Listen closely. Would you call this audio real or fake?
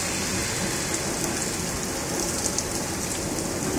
real